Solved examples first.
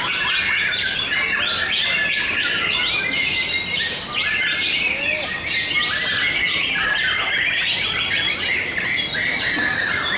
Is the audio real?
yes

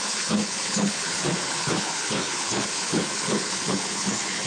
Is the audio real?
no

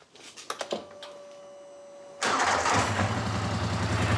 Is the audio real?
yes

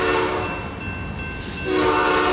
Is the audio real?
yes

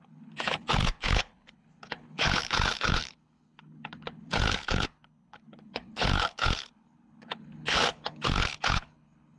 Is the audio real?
no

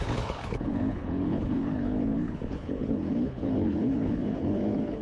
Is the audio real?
no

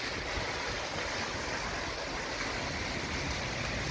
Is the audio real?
yes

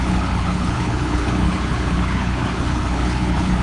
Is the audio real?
no